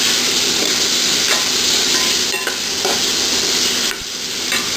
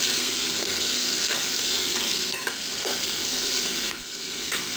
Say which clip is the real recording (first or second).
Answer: first